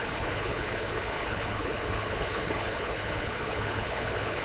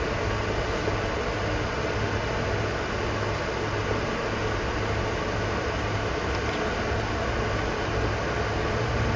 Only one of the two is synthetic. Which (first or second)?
first